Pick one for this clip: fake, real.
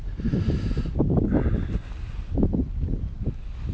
real